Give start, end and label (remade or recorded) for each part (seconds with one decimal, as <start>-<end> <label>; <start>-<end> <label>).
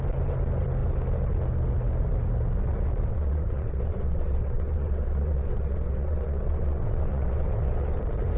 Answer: 0.0-3.1 recorded; 3.1-8.0 remade; 8.0-8.4 recorded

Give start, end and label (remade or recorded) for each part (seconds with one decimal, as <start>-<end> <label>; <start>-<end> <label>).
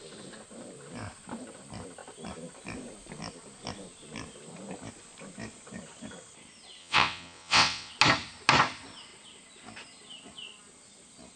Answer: 0.0-6.8 recorded; 6.8-7.9 remade; 7.9-11.4 recorded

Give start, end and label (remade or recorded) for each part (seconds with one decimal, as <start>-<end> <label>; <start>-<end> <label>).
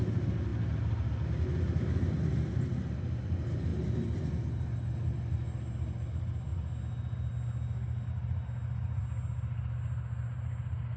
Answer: 0.0-11.0 recorded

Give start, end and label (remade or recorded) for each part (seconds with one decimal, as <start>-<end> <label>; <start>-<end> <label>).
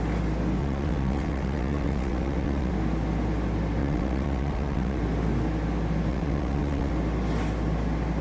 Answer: 0.0-0.6 recorded; 0.6-2.7 remade; 2.7-3.8 recorded; 3.8-5.0 remade; 5.0-6.1 recorded; 6.1-6.9 remade; 6.9-8.2 recorded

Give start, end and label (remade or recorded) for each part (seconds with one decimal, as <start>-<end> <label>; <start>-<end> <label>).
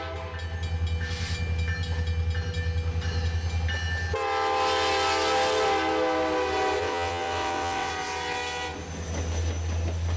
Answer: 0.0-6.8 recorded; 6.8-7.9 remade; 7.9-10.2 recorded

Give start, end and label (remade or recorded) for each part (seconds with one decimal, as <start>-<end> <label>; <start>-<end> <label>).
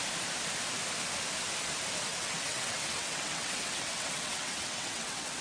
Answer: 0.0-2.1 recorded; 2.1-5.4 remade